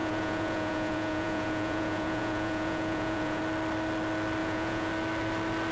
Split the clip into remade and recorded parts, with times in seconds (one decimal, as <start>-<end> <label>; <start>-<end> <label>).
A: 0.0-3.4 remade; 3.4-4.4 recorded; 4.4-4.9 remade; 4.9-5.7 recorded